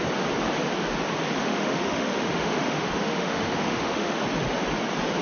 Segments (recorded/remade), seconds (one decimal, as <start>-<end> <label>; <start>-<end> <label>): 0.0-1.4 recorded; 1.4-4.2 remade; 4.2-5.2 recorded